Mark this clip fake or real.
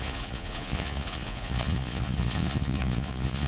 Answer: fake